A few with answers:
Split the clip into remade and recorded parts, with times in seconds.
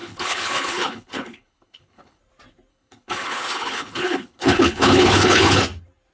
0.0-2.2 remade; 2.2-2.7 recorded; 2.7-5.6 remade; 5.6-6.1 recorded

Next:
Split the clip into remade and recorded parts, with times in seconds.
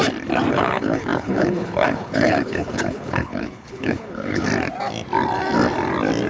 0.0-0.5 recorded; 0.5-4.5 remade; 4.5-6.3 recorded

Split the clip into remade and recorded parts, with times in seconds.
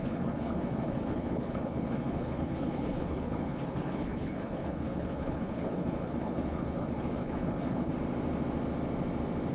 0.0-7.9 remade; 7.9-9.5 recorded